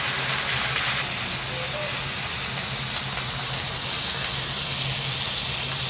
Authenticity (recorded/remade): recorded